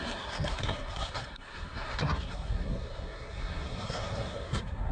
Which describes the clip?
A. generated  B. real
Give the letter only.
A